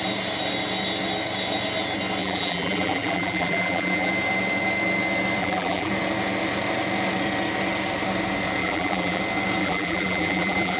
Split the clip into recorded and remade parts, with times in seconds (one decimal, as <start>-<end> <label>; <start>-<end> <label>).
0.0-2.2 recorded; 2.2-4.1 remade; 4.1-5.4 recorded; 5.4-5.9 remade; 5.9-8.6 recorded; 8.6-9.2 remade; 9.2-9.6 recorded; 9.6-10.8 remade